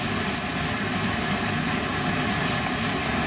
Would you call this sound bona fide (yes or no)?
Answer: yes